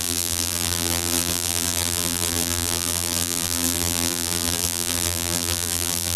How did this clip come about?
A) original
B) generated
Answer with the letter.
B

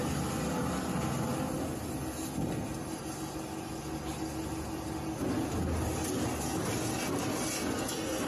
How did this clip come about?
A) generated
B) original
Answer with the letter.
B